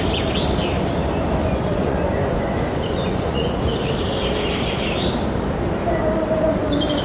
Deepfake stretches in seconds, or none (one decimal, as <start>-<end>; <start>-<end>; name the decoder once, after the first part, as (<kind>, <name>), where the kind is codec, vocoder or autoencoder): 1.4-3.7 (vocoder, Vocos)